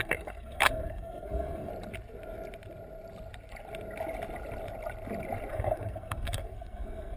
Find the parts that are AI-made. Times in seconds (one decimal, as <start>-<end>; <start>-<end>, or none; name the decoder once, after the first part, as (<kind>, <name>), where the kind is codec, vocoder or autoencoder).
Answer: 0.0-1.7 (codec, SNAC); 5.5-7.2